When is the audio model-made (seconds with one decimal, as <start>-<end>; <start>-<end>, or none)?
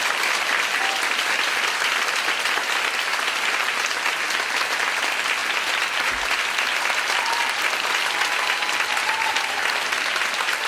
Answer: none